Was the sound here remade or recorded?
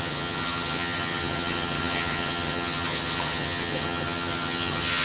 remade